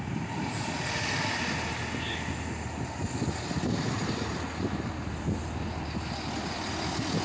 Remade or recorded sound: recorded